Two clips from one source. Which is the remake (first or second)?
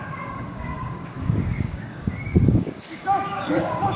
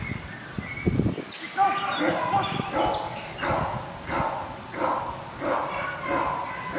first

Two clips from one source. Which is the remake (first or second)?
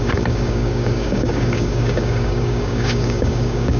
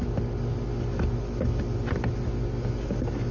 first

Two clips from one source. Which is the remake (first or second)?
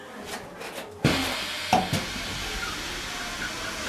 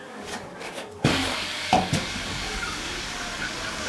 second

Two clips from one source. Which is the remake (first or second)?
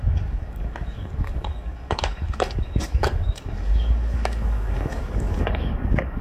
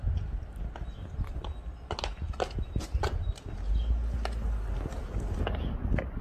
first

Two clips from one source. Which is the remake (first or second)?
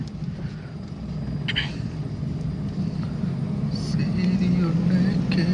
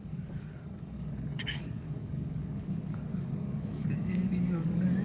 second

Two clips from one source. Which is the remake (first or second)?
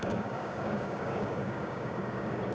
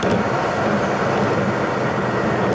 first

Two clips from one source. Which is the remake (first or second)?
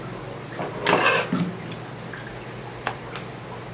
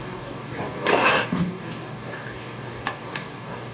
second